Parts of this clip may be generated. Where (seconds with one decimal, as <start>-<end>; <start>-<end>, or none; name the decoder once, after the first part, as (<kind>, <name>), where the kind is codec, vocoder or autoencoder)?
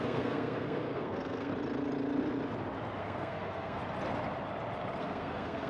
0.0-1.5 (codec, SNAC); 3.0-3.8; 5.0-5.7